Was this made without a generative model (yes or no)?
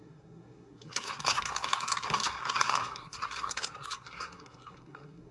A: no